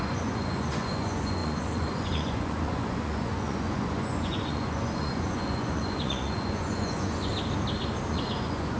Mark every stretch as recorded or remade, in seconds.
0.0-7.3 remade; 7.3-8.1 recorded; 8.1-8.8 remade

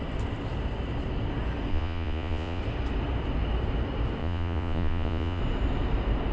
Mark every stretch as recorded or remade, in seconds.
0.0-1.7 recorded; 1.7-2.6 remade; 2.6-4.2 recorded; 4.2-5.4 remade; 5.4-6.3 recorded

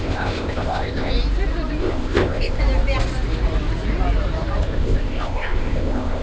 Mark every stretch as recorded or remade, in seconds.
0.0-1.1 remade; 1.1-1.8 recorded; 1.8-2.6 remade; 2.6-4.6 recorded; 4.6-6.2 remade

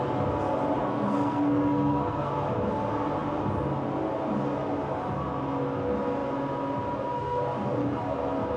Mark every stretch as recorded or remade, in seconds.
0.0-0.8 recorded; 0.8-2.3 remade; 2.3-8.6 recorded

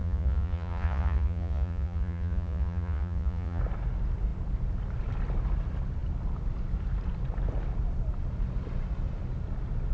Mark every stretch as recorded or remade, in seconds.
0.0-3.6 remade; 3.6-9.9 recorded

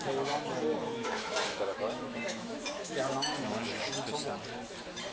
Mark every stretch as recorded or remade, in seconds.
0.0-0.8 recorded; 0.8-3.9 remade; 3.9-5.1 recorded

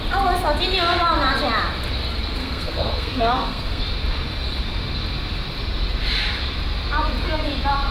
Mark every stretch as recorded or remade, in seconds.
0.0-2.4 recorded; 2.4-3.8 remade; 3.8-7.9 recorded